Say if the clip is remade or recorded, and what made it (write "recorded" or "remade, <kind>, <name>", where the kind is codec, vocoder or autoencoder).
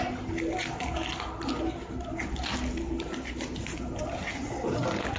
recorded